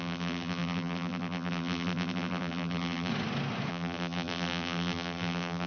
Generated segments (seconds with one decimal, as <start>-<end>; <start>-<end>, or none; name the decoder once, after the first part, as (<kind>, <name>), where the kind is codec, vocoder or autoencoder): 0.0-3.1 (vocoder, BigVGAN v2); 3.7-5.7